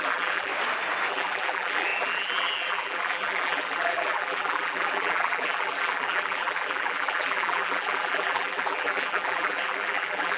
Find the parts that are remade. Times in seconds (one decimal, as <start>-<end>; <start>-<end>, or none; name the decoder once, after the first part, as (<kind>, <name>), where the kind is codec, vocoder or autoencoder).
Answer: 0.0-0.5 (vocoder, BigVGAN v2); 1.1-10.4